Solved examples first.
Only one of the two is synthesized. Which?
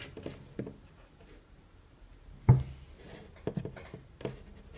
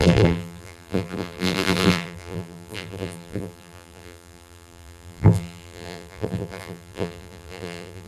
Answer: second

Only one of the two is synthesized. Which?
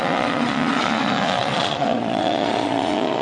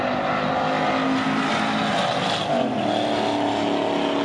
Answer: first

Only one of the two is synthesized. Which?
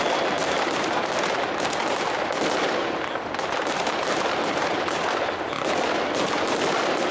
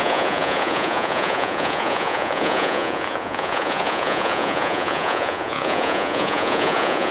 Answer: second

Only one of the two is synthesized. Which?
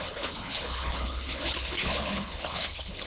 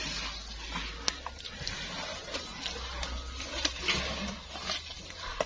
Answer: first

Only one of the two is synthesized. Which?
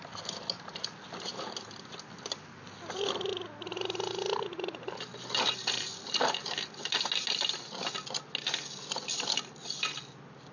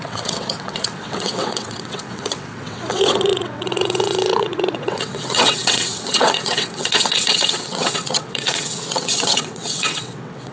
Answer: second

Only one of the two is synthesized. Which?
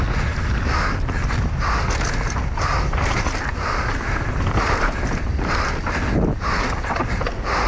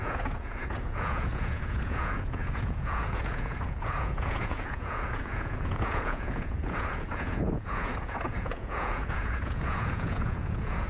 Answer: second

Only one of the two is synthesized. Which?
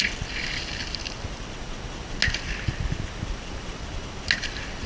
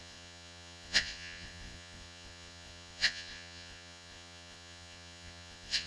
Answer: second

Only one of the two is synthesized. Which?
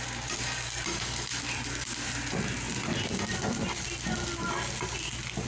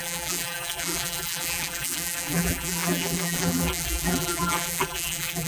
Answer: second